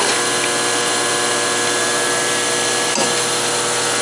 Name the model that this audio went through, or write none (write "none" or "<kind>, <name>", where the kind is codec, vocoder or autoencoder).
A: none